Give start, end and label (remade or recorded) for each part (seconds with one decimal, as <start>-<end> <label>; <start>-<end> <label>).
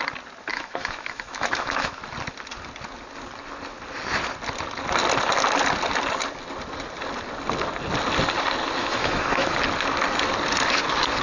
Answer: 0.0-0.5 recorded; 0.5-2.0 remade; 2.0-8.8 recorded; 8.8-9.6 remade; 9.6-11.2 recorded